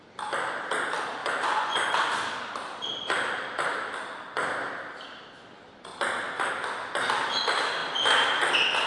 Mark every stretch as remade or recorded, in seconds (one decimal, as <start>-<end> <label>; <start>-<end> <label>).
0.0-1.2 recorded; 1.2-1.9 remade; 1.9-8.9 recorded